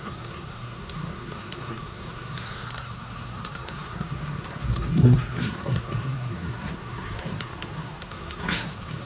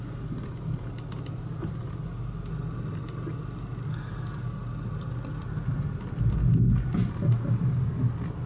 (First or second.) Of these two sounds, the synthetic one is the first